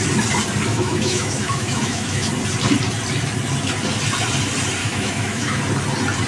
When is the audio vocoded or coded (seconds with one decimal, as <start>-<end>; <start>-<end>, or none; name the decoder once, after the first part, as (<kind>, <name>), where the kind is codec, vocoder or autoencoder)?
0.7-2.3 (autoencoder, DAC-VAE); 4.8-5.6